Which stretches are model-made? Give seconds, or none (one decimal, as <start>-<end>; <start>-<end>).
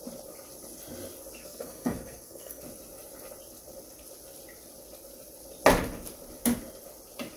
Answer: 1.4-2.6